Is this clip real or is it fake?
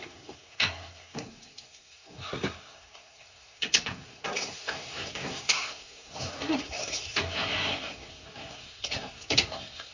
fake